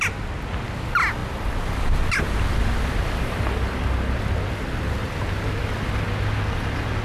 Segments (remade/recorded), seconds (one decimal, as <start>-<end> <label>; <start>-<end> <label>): 0.0-5.0 recorded; 5.0-5.6 remade; 5.6-7.0 recorded